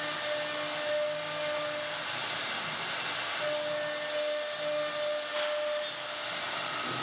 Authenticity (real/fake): real